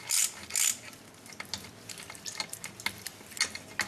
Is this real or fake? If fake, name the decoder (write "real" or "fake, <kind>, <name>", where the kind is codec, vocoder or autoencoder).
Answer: real